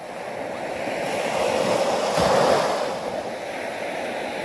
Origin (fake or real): real